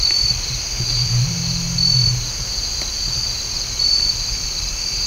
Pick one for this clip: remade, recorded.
recorded